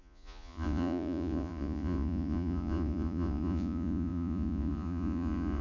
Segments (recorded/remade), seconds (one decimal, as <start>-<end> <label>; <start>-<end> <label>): 0.0-5.6 remade